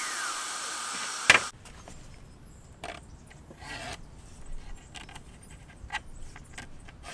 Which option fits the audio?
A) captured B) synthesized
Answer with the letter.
A